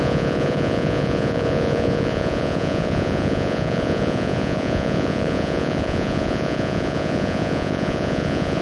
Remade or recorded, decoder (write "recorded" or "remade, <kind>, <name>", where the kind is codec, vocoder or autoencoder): remade, vocoder, Vocos